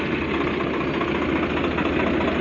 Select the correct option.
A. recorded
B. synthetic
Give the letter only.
A